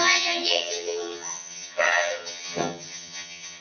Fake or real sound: fake